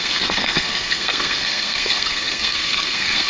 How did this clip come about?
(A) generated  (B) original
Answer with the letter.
A